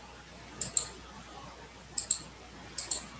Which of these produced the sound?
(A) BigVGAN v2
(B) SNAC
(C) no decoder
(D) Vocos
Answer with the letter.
C